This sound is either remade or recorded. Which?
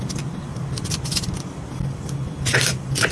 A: recorded